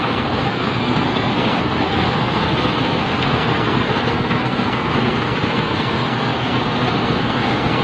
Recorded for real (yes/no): no